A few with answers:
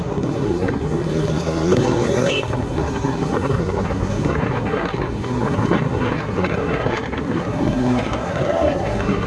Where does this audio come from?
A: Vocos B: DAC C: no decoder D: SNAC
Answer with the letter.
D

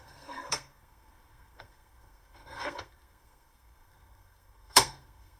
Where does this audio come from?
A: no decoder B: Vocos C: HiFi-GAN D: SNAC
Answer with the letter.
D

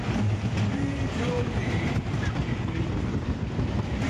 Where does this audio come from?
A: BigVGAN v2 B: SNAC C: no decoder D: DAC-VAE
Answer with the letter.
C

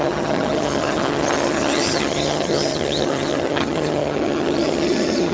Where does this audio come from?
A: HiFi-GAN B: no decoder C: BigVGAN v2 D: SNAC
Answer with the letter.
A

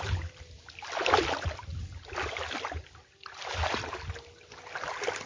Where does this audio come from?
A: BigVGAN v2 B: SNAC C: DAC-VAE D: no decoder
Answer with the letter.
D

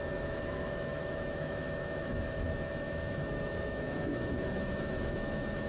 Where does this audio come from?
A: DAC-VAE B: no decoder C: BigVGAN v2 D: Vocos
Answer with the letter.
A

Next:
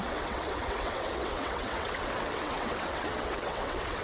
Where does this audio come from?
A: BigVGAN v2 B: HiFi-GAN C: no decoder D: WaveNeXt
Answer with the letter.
D